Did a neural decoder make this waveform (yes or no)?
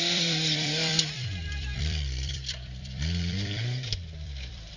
yes